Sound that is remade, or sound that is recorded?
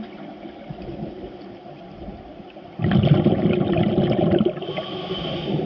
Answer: recorded